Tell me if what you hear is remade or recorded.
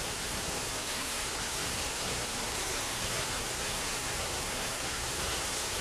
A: remade